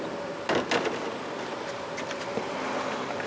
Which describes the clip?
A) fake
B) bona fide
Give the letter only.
B